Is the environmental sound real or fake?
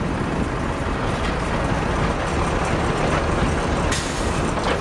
real